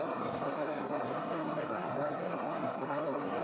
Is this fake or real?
fake